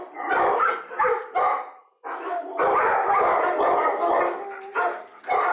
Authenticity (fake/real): real